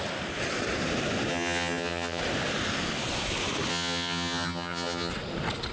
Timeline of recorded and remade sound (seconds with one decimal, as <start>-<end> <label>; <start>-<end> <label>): 0.0-1.3 recorded; 1.3-2.2 remade; 2.2-3.7 recorded; 3.7-5.1 remade; 5.1-5.7 recorded